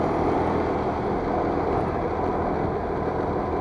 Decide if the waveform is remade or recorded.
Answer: recorded